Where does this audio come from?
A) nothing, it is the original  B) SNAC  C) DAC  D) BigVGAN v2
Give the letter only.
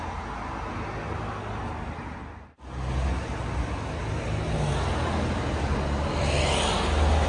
A